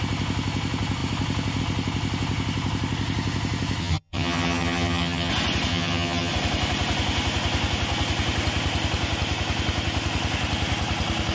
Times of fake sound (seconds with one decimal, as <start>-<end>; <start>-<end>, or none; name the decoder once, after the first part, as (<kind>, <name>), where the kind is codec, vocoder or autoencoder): 3.8-5.3 (vocoder, HiFi-GAN); 5.7-6.3